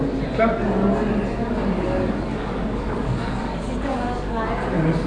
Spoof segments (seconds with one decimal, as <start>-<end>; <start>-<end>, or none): 1.4-4.5